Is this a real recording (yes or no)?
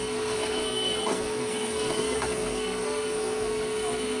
no